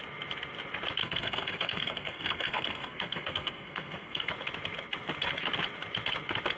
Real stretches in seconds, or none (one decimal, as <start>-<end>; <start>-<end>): 0.0-1.0; 4.3-6.6